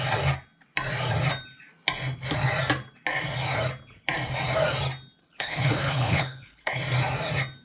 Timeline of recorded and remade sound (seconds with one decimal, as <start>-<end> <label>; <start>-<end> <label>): 0.0-5.2 recorded; 5.2-6.8 remade; 6.8-7.6 recorded